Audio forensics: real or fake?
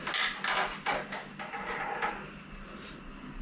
real